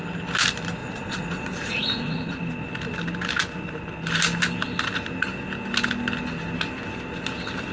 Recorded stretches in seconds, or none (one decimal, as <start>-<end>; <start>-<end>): 0.0-0.8; 2.4-7.7